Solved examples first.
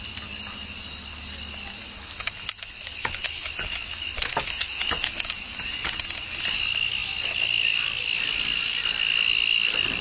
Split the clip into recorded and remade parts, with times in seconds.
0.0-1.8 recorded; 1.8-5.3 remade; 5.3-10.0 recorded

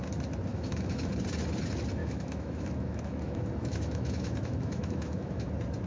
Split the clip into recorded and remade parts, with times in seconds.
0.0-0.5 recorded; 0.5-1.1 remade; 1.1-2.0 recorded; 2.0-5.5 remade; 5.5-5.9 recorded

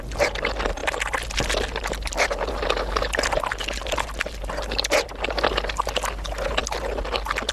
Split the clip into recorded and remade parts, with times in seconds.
0.0-7.5 recorded

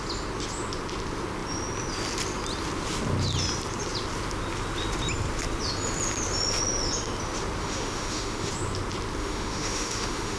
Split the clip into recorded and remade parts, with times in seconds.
0.0-7.6 recorded; 7.6-8.5 remade; 8.5-9.2 recorded; 9.2-10.4 remade